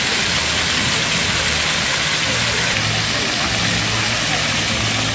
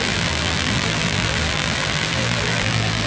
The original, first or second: first